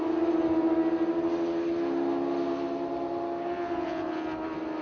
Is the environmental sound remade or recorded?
recorded